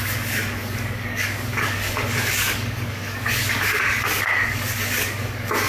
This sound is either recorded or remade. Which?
remade